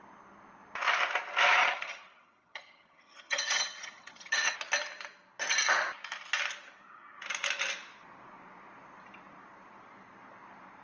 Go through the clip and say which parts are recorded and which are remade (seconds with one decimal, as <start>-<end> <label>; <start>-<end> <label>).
0.0-1.6 recorded; 1.6-4.5 remade; 4.5-10.8 recorded